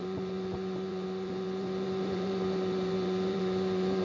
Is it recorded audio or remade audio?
remade